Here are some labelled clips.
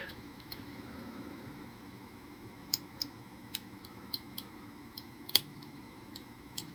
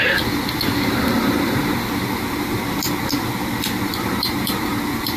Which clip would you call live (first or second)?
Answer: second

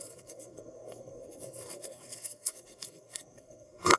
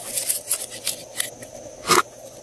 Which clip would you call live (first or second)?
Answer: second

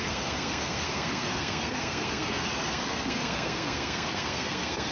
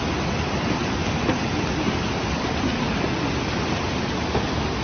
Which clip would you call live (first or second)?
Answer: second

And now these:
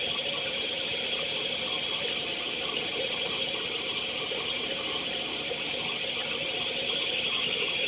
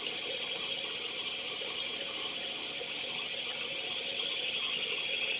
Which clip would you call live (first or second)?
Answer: second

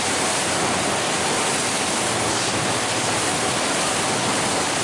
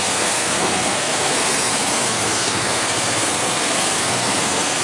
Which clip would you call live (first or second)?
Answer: first